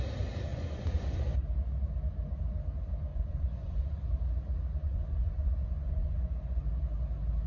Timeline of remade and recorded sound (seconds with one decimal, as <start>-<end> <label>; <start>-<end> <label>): 0.0-0.5 recorded; 0.5-1.2 remade; 1.2-3.1 recorded; 3.1-4.1 remade; 4.1-4.8 recorded; 4.8-6.6 remade; 6.6-7.5 recorded